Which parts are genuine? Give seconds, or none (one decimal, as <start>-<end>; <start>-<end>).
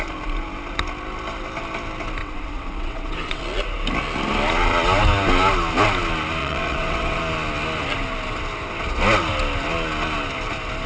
0.0-2.2; 3.4-6.4; 7.2-10.9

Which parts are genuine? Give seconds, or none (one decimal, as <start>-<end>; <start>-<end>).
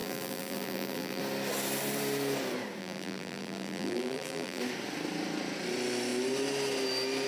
1.2-2.8; 4.6-7.3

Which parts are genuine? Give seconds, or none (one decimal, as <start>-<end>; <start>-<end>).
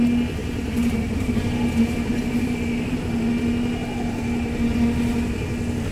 0.0-0.4; 2.5-5.9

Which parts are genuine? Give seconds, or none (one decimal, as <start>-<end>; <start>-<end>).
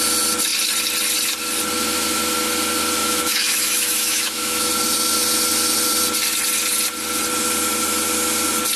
0.0-3.0; 4.7-8.8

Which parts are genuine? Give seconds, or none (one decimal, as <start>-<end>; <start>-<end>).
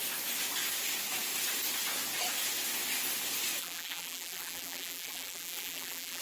0.0-3.6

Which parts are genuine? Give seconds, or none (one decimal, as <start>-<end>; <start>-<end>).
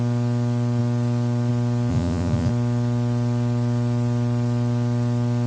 0.0-1.9; 2.5-5.5